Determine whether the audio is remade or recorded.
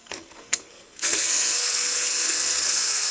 remade